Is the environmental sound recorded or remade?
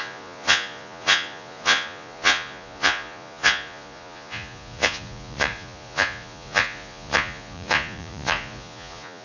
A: remade